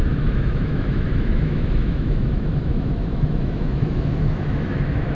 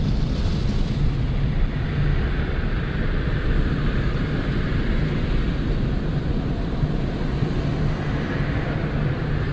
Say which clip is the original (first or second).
second